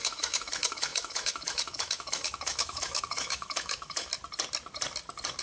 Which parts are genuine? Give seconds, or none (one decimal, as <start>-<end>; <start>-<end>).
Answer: 4.1-5.4